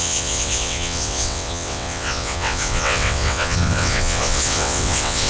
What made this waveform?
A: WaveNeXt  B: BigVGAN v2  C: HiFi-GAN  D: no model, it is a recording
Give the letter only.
A